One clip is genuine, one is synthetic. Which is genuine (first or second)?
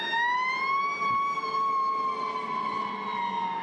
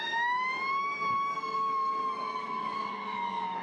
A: first